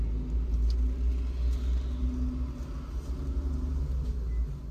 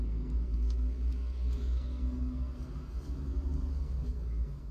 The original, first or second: first